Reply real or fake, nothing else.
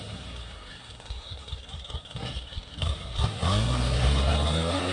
fake